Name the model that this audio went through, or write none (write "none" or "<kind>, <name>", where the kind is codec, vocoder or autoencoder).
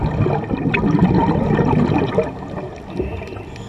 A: none